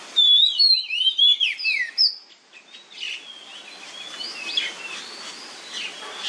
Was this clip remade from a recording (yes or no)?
no